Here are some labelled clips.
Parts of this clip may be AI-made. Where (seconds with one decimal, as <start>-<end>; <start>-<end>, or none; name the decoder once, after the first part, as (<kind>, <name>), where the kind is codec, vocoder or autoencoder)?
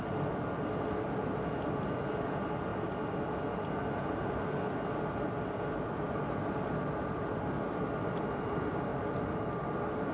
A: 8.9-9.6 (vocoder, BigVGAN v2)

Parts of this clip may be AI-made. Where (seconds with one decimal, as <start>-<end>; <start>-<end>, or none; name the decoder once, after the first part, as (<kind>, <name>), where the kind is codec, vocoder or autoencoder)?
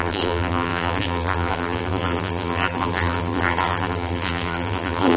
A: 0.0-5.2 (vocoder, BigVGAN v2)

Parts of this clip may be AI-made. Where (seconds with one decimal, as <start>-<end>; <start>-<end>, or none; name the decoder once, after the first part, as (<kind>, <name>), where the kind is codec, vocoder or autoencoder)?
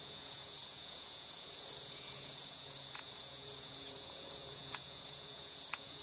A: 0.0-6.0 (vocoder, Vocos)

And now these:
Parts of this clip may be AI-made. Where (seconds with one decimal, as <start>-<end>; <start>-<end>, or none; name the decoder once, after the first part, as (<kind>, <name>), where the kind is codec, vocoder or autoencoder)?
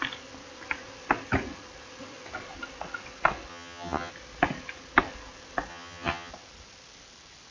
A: 3.5-4.1 (vocoder, HiFi-GAN); 5.7-6.3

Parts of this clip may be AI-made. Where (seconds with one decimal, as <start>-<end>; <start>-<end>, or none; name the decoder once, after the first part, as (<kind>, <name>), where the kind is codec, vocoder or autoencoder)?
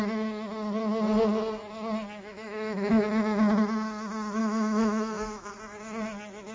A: 2.2-3.0 (autoencoder, DAC-VAE); 4.4-5.5